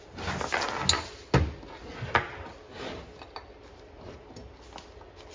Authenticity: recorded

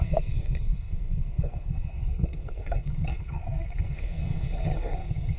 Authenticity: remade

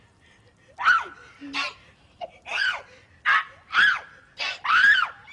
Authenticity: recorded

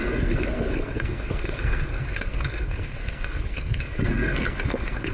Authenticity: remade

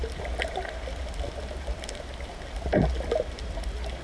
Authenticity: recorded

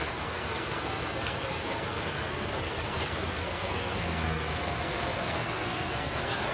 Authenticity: remade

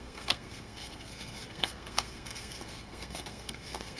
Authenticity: remade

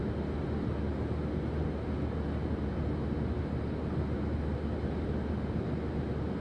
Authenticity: recorded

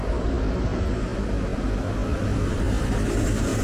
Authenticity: recorded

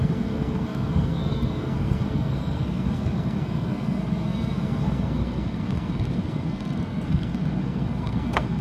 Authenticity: remade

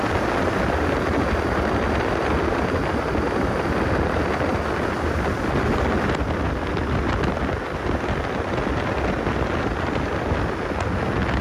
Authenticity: recorded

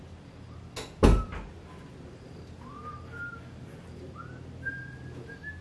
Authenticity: recorded